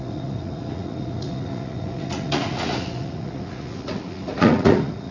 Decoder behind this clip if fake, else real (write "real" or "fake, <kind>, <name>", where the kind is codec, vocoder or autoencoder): fake, vocoder, Vocos